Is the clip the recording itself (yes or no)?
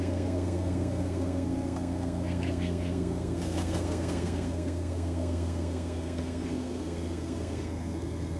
no